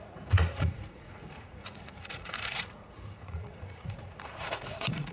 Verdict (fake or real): fake